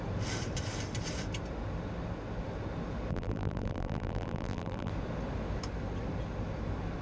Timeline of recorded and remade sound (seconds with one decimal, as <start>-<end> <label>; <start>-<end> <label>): 0.0-3.1 recorded; 3.1-4.9 remade; 4.9-7.0 recorded

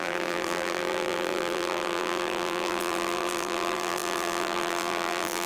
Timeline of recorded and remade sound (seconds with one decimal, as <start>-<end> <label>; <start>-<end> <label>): 0.0-5.5 remade

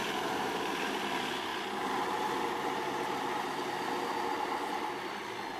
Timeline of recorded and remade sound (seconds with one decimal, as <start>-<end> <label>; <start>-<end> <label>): 0.0-1.5 remade; 1.5-4.7 recorded; 4.7-5.6 remade

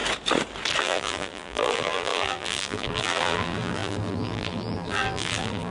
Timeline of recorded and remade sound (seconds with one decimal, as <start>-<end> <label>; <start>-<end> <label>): 0.0-0.8 recorded; 0.8-5.7 remade

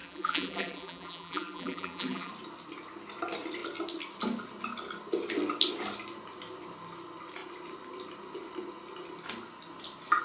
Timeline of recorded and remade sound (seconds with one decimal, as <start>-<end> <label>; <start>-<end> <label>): 0.0-2.3 remade; 2.3-10.2 recorded

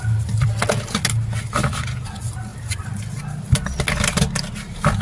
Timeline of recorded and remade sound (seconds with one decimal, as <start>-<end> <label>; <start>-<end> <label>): 0.0-5.0 recorded

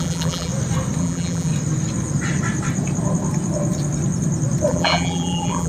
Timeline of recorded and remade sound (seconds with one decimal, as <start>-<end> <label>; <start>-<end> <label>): 0.0-0.5 remade; 0.5-1.0 recorded; 1.0-1.5 remade; 1.5-4.7 recorded; 4.7-5.7 remade